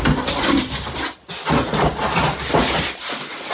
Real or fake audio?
real